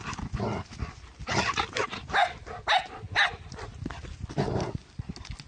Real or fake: real